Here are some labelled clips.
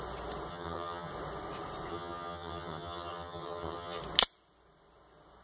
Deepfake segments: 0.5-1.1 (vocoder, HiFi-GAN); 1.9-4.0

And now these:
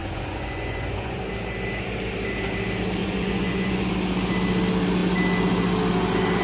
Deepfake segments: 0.0-1.2 (vocoder, Vocos); 3.0-3.9

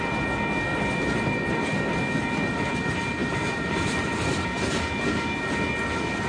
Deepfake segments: 0.7-2.0 (vocoder, BigVGAN v2); 3.2-4.5